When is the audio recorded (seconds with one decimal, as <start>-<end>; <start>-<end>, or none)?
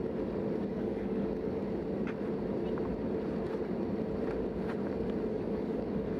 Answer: 0.0-0.7; 1.6-5.3